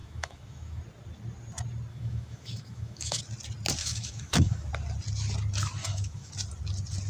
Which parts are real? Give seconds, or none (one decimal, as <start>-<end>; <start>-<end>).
0.8-1.9; 3.2-3.8; 4.7-5.8; 6.3-7.1